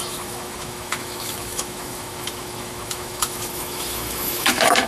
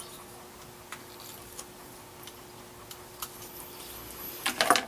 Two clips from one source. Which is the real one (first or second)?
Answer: second